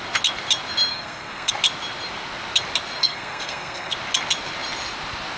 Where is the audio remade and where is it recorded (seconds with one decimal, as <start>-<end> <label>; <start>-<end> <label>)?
0.0-0.9 recorded; 0.9-1.5 remade; 1.5-3.0 recorded; 3.0-3.9 remade; 3.9-5.4 recorded